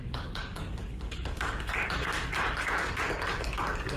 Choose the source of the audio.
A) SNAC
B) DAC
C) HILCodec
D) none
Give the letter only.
B